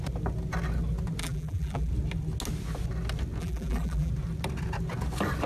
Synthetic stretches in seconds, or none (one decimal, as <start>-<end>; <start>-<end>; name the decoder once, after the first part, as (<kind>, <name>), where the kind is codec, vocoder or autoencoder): 1.2-1.9 (vocoder, BigVGAN v2); 3.4-4.1